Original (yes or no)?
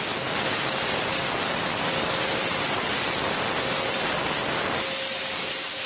yes